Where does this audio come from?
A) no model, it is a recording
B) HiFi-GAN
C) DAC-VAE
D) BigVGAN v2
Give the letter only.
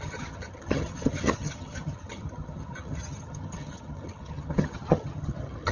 B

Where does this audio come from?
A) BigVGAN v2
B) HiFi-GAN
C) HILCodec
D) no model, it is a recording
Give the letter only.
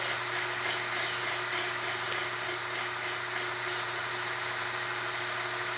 D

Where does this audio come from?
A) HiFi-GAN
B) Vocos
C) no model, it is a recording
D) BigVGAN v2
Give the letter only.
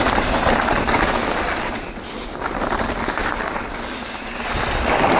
C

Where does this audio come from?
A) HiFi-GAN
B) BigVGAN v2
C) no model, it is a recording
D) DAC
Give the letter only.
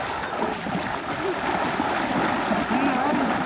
C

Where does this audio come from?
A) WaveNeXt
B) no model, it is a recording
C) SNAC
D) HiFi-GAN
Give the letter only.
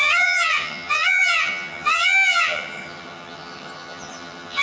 D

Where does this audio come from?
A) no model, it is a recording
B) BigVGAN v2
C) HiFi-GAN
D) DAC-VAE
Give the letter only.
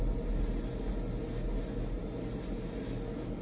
A